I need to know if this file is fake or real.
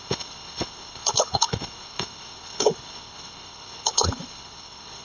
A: fake